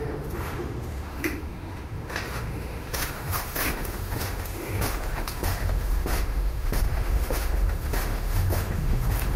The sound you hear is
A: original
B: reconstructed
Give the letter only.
B